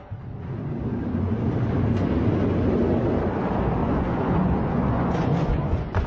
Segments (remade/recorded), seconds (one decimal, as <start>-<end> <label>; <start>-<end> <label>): 0.0-3.8 recorded; 3.8-6.1 remade

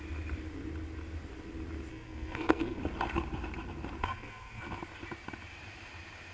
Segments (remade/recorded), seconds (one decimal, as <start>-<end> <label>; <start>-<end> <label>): 0.0-1.9 recorded; 1.9-2.8 remade; 2.8-4.0 recorded; 4.0-4.6 remade; 4.6-6.3 recorded

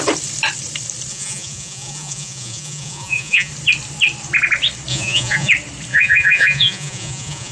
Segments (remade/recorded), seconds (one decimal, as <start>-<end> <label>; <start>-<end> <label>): 0.0-1.1 recorded; 1.1-3.5 remade; 3.5-4.9 recorded; 4.9-5.5 remade; 5.5-5.9 recorded; 5.9-7.5 remade

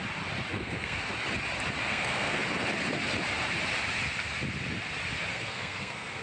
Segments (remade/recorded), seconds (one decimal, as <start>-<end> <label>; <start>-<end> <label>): 0.0-0.5 recorded; 0.5-1.1 remade; 1.1-1.8 recorded; 1.8-2.4 remade; 2.4-5.3 recorded; 5.3-6.2 remade

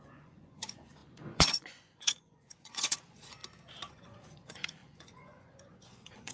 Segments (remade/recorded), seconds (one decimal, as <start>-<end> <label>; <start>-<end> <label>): 0.0-3.4 remade; 3.4-3.9 recorded; 3.9-6.3 remade